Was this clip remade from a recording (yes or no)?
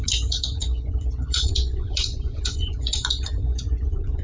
yes